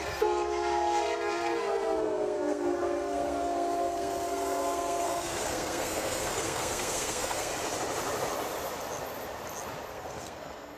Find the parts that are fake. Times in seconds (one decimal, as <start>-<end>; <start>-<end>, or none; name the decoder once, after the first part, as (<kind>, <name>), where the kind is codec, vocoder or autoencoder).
0.0-7.5 (codec, SNAC); 9.9-10.8